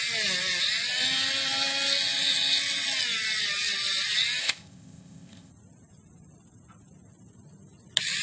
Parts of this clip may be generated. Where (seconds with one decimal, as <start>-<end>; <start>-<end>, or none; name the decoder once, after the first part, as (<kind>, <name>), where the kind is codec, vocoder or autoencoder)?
4.4-5.5 (codec, ZipCodec)